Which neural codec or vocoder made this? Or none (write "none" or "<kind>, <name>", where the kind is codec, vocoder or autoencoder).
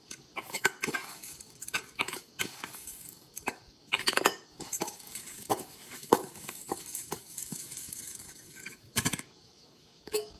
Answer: codec, DAC